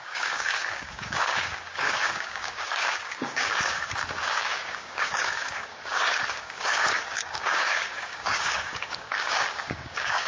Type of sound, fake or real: fake